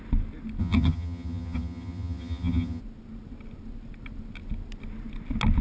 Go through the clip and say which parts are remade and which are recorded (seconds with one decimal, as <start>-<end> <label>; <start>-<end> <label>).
0.0-0.6 recorded; 0.6-2.8 remade; 2.8-5.6 recorded